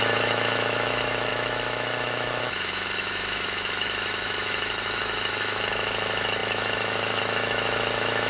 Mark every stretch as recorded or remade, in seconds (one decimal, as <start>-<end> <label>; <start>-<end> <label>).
0.0-8.3 remade